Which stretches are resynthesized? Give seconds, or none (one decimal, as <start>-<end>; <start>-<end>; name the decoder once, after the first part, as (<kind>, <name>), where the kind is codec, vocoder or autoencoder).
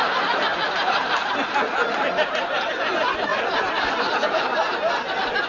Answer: 0.5-1.3 (vocoder, BigVGAN v2)